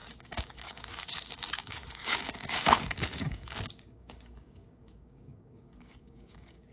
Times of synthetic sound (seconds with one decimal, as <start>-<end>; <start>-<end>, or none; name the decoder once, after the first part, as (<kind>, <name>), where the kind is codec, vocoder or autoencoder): 0.0-6.7 (codec, DAC)